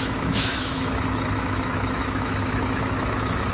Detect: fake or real fake